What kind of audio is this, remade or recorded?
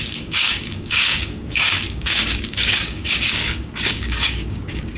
remade